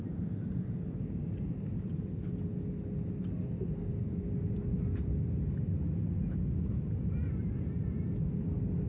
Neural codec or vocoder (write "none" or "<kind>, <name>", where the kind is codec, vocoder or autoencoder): none